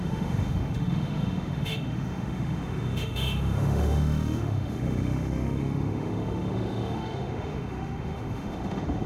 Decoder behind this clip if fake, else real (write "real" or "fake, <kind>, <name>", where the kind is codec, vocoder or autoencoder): fake, autoencoder, DAC-VAE